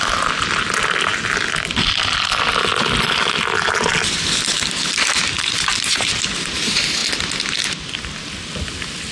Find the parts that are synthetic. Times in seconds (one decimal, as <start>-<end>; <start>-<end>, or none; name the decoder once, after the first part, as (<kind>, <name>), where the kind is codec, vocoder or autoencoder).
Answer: none